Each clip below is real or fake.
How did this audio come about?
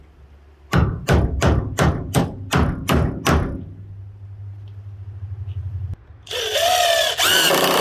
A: real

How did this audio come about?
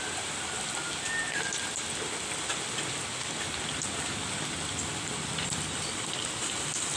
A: real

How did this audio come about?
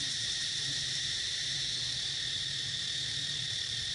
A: fake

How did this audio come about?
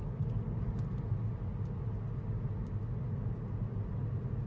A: real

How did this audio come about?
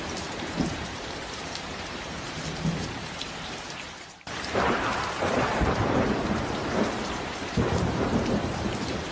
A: fake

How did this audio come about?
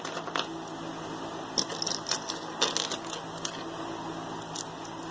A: real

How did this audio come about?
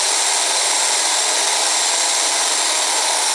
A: real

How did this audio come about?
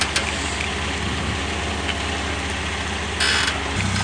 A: real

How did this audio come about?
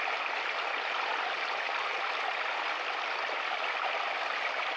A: real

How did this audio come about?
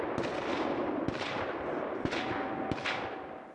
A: real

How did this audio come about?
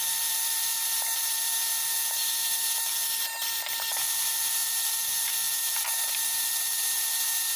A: fake